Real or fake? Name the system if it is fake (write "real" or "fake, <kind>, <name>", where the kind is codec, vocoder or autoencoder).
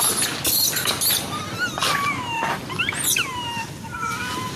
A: real